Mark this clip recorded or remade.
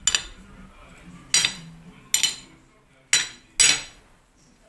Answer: recorded